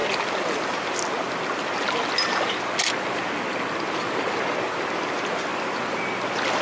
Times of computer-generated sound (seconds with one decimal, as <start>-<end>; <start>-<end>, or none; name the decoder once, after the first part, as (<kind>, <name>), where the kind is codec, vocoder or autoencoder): none